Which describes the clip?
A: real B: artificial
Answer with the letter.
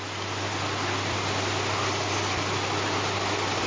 A